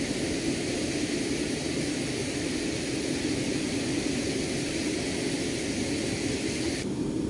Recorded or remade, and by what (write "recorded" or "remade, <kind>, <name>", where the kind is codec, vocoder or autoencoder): recorded